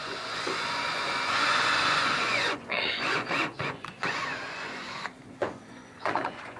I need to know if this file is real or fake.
fake